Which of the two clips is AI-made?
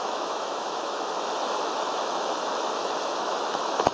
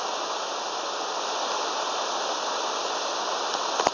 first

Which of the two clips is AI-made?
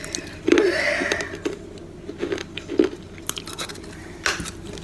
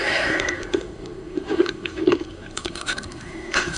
second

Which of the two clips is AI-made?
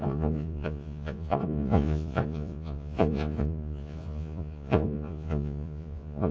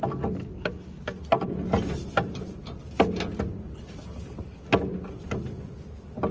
first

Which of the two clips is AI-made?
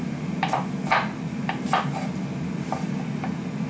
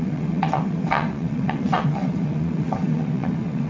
second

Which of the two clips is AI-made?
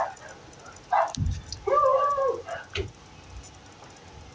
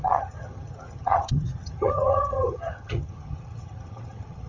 second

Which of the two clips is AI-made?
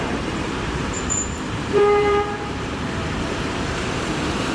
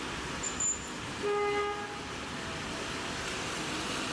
first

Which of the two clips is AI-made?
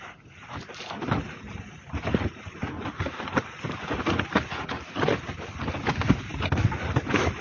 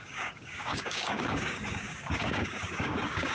second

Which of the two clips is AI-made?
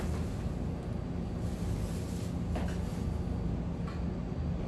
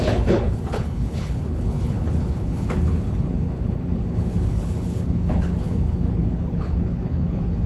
second